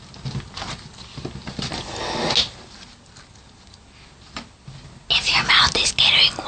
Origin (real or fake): real